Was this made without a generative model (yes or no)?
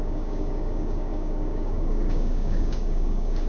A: no